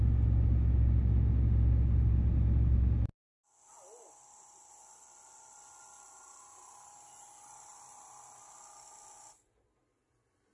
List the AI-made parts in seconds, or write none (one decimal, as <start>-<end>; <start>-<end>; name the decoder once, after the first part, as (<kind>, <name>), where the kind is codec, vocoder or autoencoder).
none